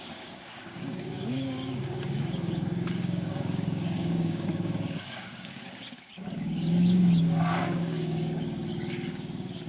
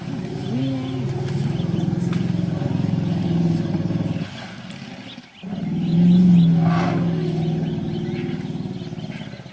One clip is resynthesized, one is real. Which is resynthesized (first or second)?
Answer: first